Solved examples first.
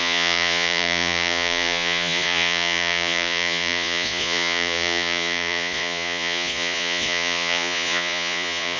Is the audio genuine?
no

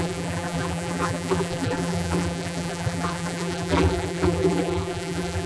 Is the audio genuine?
no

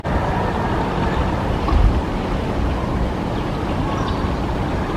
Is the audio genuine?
yes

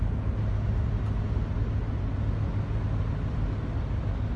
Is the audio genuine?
yes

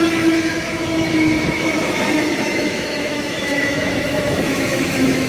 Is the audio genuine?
no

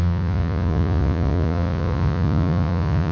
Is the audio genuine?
no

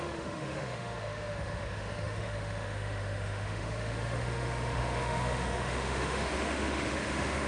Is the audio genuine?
no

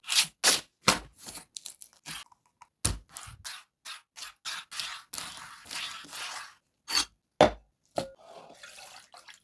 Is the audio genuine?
yes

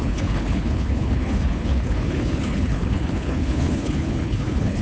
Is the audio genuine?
no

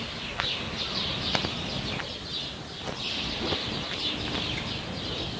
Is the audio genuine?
yes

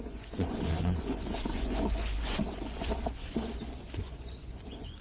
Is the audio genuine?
no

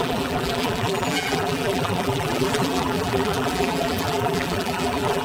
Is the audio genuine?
no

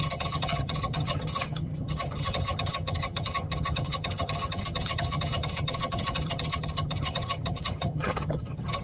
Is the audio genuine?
no